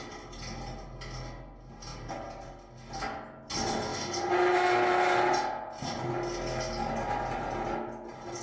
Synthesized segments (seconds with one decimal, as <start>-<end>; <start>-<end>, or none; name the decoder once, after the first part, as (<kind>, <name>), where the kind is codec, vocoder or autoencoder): 1.9-2.5 (vocoder, BigVGAN v2)